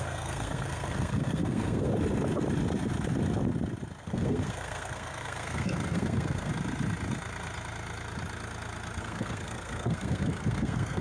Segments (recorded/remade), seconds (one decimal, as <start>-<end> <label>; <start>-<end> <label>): 0.0-1.9 remade; 1.9-4.0 recorded; 4.0-6.5 remade; 6.5-9.0 recorded; 9.0-11.0 remade